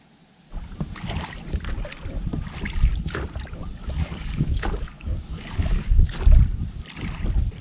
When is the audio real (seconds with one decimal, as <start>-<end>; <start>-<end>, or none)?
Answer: 0.0-3.6; 5.9-7.6